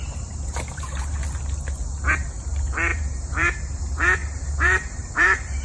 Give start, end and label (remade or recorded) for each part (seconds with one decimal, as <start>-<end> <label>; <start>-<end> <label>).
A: 0.0-1.2 remade; 1.2-2.1 recorded; 2.1-5.6 remade